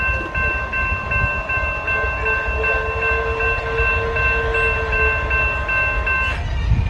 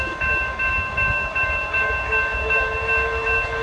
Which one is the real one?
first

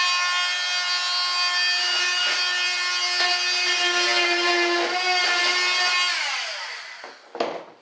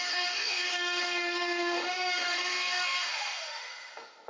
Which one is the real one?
first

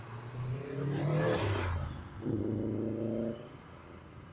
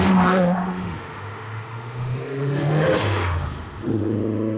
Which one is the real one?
first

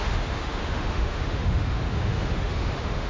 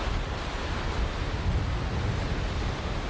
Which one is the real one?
second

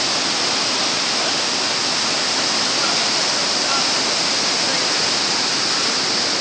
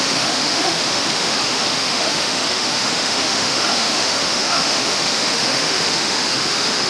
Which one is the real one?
first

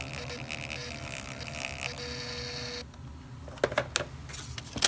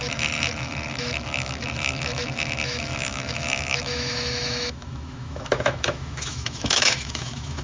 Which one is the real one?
first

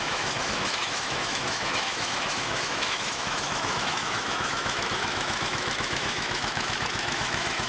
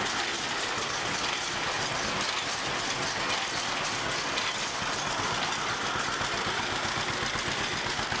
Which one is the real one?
second